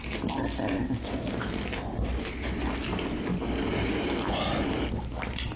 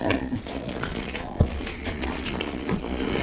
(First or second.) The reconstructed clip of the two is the second